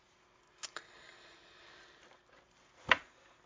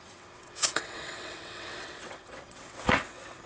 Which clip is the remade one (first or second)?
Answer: second